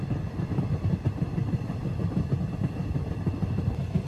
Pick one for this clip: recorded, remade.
recorded